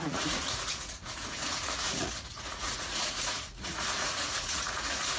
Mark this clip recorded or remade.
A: remade